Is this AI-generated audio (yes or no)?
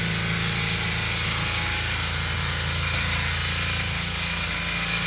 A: no